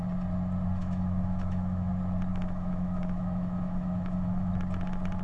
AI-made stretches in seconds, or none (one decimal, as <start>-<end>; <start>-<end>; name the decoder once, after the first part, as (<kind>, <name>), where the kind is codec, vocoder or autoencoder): 0.8-1.9 (autoencoder, DAC-VAE); 2.3-4.5

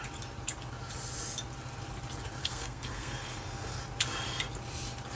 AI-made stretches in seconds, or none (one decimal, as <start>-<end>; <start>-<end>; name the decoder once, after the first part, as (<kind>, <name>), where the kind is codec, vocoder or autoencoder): 2.4-3.8 (codec, SNAC)

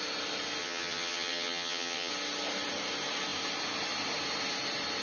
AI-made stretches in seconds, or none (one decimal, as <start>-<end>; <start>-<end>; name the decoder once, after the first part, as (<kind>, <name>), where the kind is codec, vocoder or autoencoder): 0.6-2.1 (vocoder, HiFi-GAN)

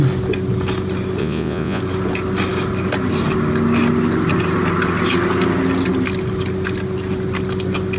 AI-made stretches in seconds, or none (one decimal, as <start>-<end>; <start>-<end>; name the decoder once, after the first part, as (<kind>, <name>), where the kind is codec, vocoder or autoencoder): 1.2-1.8 (vocoder, Vocos)

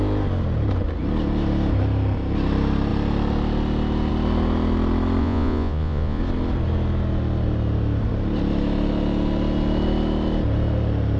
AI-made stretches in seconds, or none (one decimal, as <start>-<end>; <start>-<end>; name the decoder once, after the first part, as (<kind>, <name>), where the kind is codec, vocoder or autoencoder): 5.2-6.2 (vocoder, Vocos)

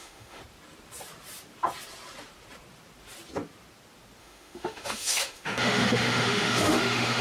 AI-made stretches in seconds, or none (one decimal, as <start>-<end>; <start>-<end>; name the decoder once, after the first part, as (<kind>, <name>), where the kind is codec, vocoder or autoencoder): 0.0-0.4 (autoencoder, DAC-VAE); 4.2-7.2